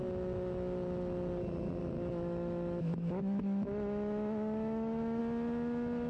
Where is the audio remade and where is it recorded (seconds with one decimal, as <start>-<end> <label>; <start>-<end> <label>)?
0.0-1.8 recorded; 1.8-5.2 remade; 5.2-6.1 recorded